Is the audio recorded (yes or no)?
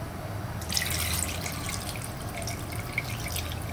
yes